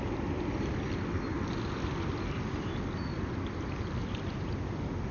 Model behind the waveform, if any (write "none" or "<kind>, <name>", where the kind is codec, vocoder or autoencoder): none